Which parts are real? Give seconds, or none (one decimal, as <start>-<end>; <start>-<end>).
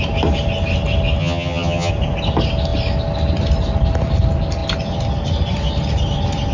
0.0-1.2; 1.9-6.5